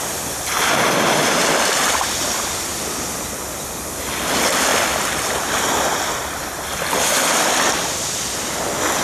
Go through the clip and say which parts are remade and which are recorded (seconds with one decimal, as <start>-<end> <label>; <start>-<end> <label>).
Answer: 0.0-9.0 recorded